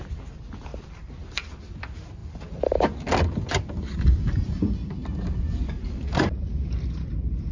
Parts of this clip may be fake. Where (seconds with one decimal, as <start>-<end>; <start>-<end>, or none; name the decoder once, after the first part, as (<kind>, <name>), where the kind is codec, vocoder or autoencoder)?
0.7-1.5 (vocoder, BigVGAN v2); 2.2-2.8; 5.0-6.3